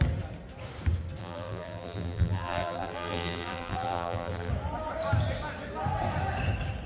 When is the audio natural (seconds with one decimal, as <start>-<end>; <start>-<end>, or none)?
0.0-1.2; 4.5-6.9